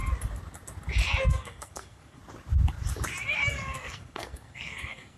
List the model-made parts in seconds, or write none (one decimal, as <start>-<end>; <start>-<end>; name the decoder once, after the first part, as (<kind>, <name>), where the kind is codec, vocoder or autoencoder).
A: 1.3-2.2 (codec, SNAC); 3.5-5.2